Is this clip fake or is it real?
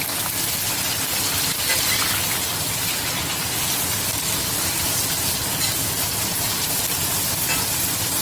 real